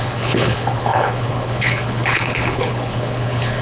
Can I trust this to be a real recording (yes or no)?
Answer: no